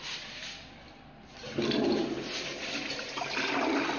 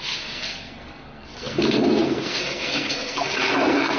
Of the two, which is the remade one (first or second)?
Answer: second